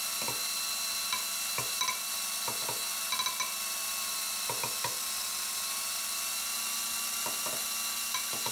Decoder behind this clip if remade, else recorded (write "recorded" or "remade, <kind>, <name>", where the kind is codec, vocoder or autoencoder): recorded